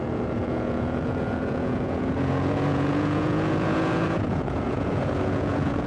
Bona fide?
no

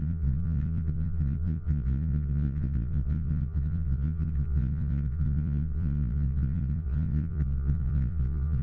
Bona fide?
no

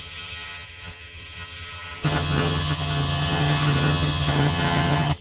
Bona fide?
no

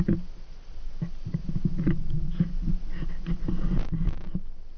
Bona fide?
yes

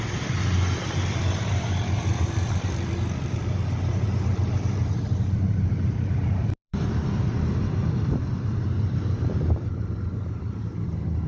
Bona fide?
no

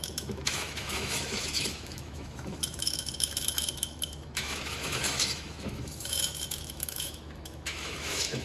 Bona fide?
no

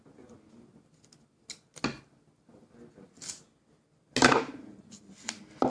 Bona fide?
yes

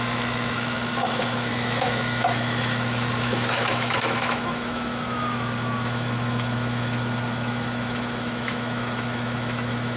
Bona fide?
no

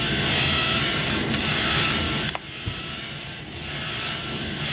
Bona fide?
yes